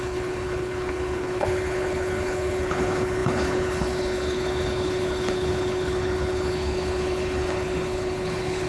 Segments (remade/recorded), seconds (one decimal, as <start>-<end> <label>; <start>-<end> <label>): 0.0-8.7 remade